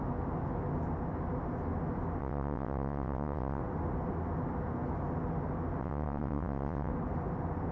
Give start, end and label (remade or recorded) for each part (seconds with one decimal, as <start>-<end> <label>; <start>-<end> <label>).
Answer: 0.0-2.2 recorded; 2.2-3.6 remade; 3.6-5.8 recorded; 5.8-6.9 remade; 6.9-7.7 recorded